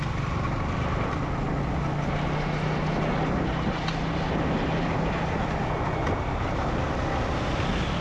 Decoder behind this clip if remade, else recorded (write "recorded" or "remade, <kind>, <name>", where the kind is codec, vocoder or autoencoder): recorded